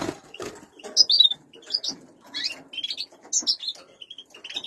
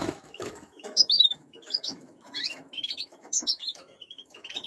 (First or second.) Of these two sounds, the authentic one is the first